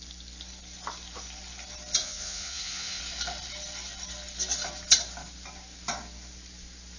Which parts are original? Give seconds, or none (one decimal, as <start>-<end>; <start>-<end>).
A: 0.0-2.0; 3.0-7.0